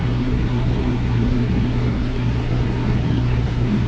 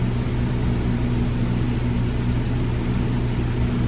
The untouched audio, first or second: second